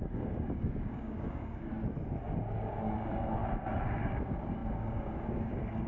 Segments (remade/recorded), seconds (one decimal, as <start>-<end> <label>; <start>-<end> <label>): 0.0-1.7 remade; 1.7-2.6 recorded; 2.6-3.4 remade; 3.4-4.0 recorded; 4.0-5.9 remade